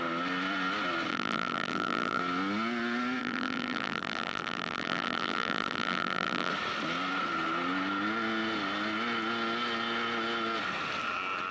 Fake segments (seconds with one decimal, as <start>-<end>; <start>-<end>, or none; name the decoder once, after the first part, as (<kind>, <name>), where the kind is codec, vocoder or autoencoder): 1.1-2.2 (vocoder, BigVGAN v2); 3.2-6.5